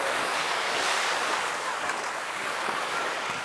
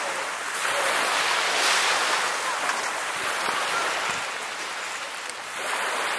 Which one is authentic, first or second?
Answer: second